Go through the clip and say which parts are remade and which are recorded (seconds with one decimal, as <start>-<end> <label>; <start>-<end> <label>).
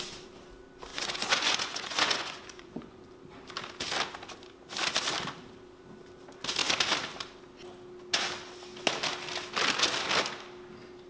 0.0-0.9 recorded; 0.9-3.0 remade; 3.0-11.1 recorded